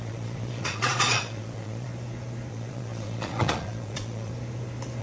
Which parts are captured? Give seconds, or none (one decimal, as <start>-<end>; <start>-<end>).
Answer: 1.9-2.5; 4.3-5.0